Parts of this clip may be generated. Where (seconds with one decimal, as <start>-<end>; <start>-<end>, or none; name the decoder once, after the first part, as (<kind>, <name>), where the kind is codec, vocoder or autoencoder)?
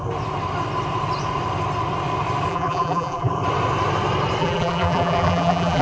2.5-3.3 (vocoder, BigVGAN v2); 4.4-5.8